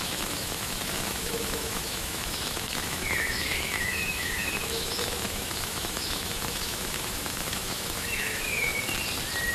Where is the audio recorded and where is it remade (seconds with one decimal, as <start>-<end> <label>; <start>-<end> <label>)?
0.0-8.7 remade; 8.7-9.5 recorded